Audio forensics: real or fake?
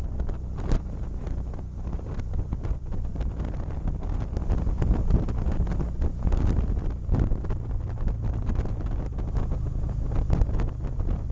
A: real